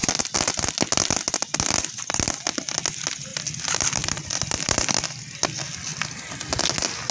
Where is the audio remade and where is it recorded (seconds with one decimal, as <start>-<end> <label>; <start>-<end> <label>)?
0.0-0.6 remade; 0.6-3.3 recorded; 3.3-5.2 remade; 5.2-5.9 recorded; 5.9-6.6 remade; 6.6-7.1 recorded